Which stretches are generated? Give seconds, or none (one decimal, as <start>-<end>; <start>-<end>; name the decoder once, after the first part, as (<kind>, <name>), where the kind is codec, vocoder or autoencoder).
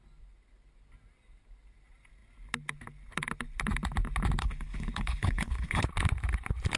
4.4-5.8 (codec, HILCodec)